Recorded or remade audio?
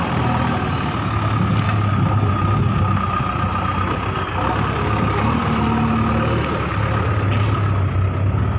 recorded